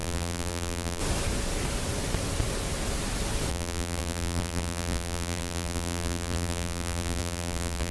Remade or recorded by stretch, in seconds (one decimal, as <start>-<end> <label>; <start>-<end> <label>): 0.0-1.0 remade; 1.0-3.5 recorded; 3.5-7.9 remade